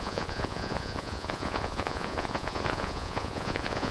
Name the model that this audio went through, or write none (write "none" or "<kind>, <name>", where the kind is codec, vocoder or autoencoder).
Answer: vocoder, Vocos